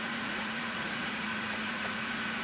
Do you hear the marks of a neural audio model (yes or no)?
yes